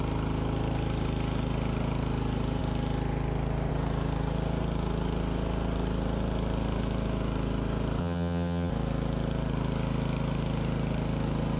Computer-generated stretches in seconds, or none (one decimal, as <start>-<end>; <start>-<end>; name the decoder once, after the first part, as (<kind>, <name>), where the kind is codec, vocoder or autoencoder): 8.0-8.7 (vocoder, HiFi-GAN)